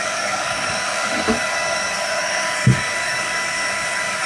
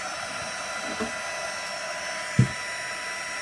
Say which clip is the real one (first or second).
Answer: second